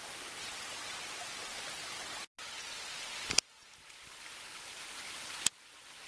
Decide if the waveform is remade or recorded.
recorded